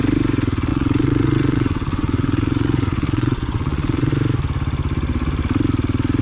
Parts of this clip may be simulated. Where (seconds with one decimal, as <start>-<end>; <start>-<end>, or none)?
0.7-4.1